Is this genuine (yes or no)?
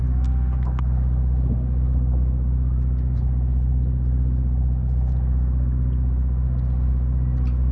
yes